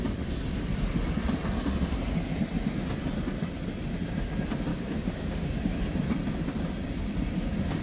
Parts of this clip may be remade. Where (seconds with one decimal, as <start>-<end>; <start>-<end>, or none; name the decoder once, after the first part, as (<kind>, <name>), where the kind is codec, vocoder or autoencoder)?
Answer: 4.7-5.8 (codec, DAC)